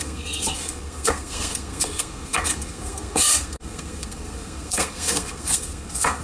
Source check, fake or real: fake